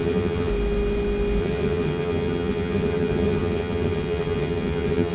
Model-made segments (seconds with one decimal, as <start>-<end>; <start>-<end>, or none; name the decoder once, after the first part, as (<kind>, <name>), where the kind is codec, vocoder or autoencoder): 0.0-0.5 (vocoder, HiFi-GAN); 1.4-5.1